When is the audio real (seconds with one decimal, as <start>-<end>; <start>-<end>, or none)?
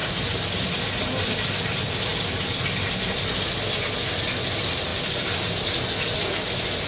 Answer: 0.0-6.9